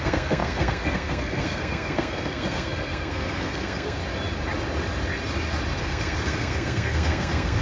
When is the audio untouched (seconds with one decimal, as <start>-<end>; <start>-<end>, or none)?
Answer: 4.0-5.8